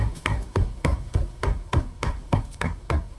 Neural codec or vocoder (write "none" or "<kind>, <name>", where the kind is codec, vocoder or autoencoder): codec, SNAC